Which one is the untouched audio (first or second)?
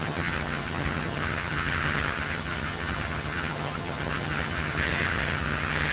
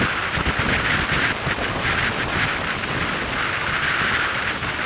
second